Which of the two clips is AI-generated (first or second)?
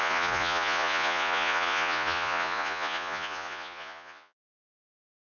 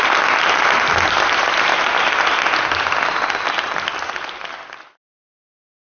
first